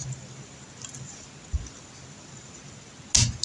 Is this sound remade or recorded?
recorded